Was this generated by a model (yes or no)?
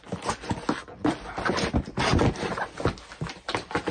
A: no